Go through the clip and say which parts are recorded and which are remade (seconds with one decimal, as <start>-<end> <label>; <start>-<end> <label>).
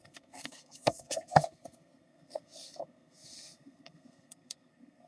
0.0-5.1 remade